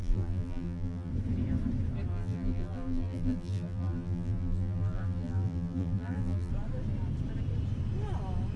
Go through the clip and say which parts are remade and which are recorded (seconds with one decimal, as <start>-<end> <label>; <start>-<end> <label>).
0.0-1.1 remade; 1.1-2.1 recorded; 2.1-6.5 remade; 6.5-8.6 recorded